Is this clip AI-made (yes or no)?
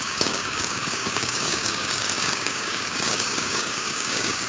yes